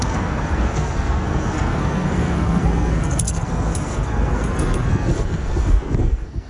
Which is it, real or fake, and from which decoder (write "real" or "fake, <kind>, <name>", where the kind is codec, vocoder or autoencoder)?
fake, codec, SNAC